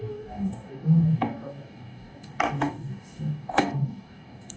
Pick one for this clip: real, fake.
fake